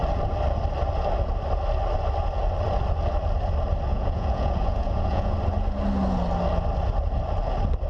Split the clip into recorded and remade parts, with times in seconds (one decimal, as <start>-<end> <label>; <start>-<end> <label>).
0.0-3.9 recorded; 3.9-5.3 remade; 5.3-7.9 recorded